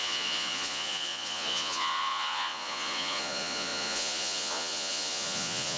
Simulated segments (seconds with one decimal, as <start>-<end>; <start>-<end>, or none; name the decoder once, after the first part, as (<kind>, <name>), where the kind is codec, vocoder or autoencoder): 0.0-5.8 (vocoder, Vocos)